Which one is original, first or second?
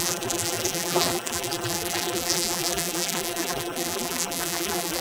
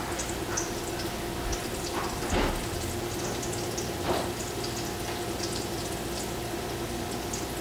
second